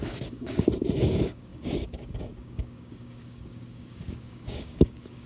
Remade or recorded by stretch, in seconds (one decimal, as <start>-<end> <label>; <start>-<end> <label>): 0.0-5.3 remade